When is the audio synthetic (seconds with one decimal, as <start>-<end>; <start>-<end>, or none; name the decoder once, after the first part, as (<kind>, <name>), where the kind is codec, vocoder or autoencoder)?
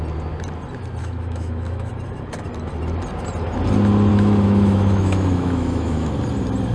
1.0-1.9 (autoencoder, DAC-VAE); 4.1-6.1